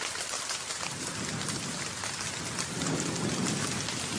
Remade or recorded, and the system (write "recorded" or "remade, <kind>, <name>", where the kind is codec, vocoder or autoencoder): recorded